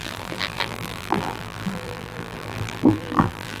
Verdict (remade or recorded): remade